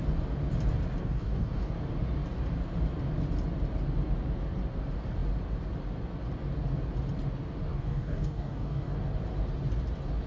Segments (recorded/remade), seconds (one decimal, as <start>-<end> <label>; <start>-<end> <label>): 0.0-1.0 recorded; 1.0-1.7 remade; 1.7-7.7 recorded; 7.7-9.0 remade; 9.0-10.3 recorded